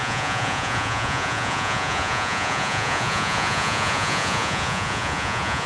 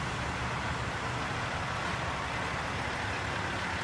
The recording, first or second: second